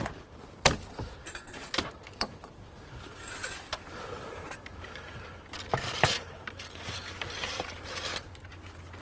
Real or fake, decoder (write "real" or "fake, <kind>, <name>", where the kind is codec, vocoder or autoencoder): fake, vocoder, BigVGAN v2